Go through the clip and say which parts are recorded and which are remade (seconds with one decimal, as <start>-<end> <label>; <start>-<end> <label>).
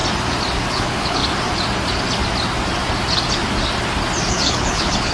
0.0-0.7 recorded; 0.7-1.2 remade; 1.2-4.3 recorded; 4.3-5.1 remade